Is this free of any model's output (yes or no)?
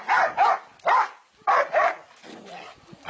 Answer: yes